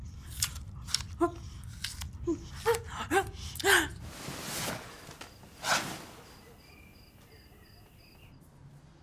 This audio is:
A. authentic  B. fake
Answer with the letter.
A